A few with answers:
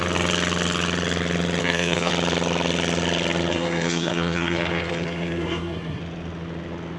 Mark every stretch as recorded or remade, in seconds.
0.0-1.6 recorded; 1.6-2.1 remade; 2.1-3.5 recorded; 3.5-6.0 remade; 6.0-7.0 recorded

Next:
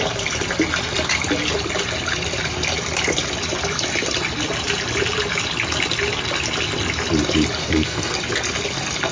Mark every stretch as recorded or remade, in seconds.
0.0-7.6 recorded; 7.6-8.1 remade; 8.1-9.1 recorded

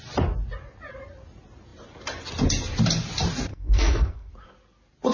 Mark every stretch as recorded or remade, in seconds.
0.0-3.5 recorded; 3.5-4.3 remade; 4.3-5.1 recorded